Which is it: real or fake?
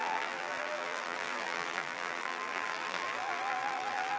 fake